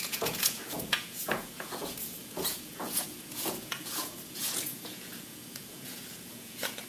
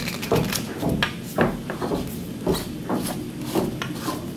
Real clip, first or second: second